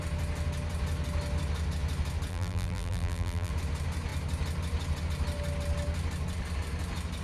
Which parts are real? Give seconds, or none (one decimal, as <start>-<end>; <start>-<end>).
0.0-2.3; 3.5-7.2